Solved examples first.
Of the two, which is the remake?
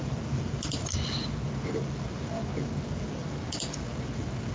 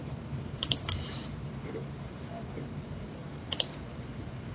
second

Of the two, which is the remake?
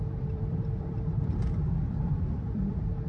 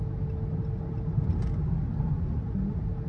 first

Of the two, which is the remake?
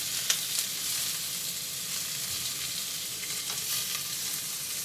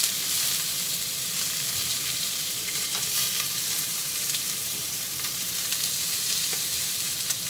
second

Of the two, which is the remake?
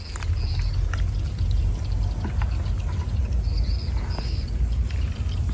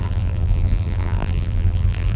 second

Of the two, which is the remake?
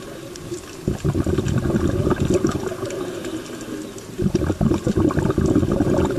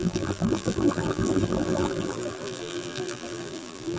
second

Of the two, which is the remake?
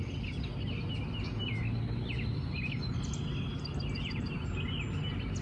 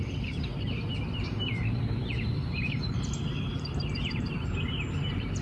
second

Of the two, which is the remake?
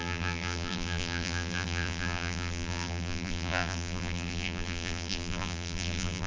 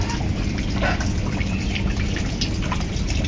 first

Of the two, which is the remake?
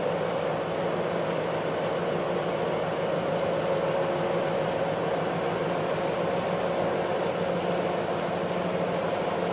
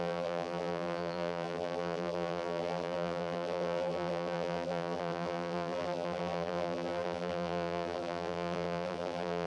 second